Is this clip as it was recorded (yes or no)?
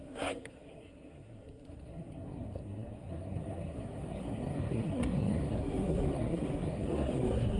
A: no